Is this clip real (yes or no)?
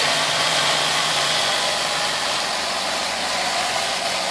no